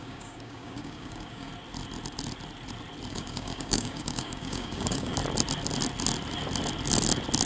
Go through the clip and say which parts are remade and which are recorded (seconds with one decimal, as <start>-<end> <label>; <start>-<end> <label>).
0.0-1.5 remade; 1.5-3.1 recorded; 3.1-5.2 remade; 5.2-7.5 recorded